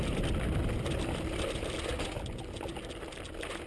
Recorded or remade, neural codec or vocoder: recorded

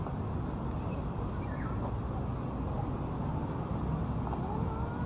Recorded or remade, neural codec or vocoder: recorded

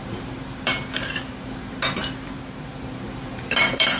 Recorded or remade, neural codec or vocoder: remade, vocoder, BigVGAN v2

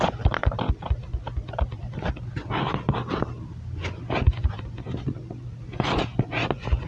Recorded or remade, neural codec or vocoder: recorded